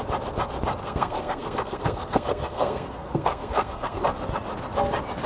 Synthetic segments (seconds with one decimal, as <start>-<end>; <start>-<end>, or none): 0.8-4.0